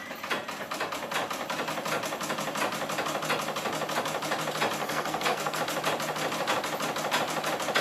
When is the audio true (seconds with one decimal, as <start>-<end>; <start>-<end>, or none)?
0.0-4.8; 5.6-7.8